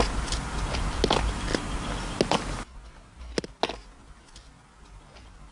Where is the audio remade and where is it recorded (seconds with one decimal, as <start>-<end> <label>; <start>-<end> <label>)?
0.0-5.5 recorded